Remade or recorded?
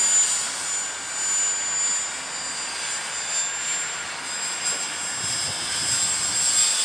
recorded